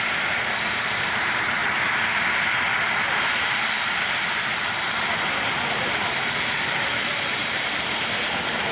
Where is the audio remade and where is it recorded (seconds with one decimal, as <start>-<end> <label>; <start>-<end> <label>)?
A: 0.0-1.6 remade; 1.6-3.1 recorded; 3.1-8.7 remade